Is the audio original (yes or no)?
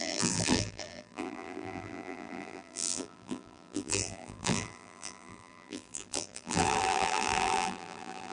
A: no